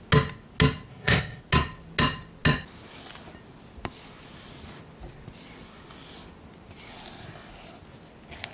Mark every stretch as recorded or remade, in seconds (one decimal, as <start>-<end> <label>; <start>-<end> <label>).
0.0-0.9 recorded; 0.9-1.4 remade; 1.4-8.5 recorded